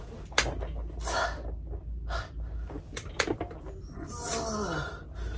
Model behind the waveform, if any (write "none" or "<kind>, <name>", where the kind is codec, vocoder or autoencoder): none